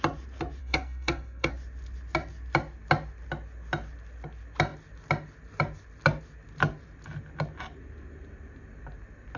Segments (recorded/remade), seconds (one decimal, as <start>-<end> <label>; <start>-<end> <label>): 0.0-0.6 recorded; 0.6-1.5 remade; 1.5-9.4 recorded